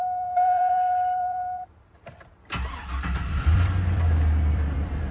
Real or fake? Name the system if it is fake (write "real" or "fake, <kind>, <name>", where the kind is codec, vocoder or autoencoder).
fake, vocoder, BigVGAN v2